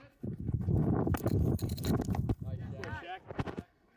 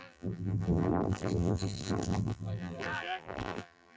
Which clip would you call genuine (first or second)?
first